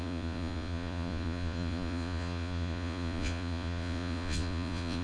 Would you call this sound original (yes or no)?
no